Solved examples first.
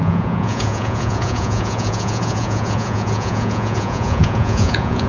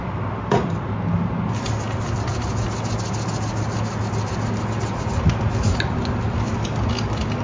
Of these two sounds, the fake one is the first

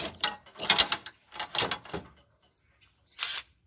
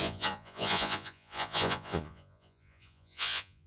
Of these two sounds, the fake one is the second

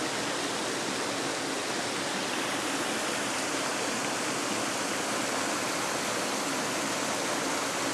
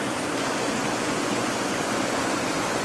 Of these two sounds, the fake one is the second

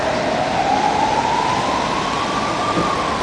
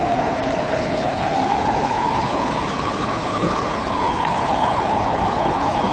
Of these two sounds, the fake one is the second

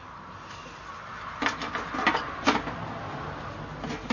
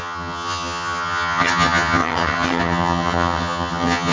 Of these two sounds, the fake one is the second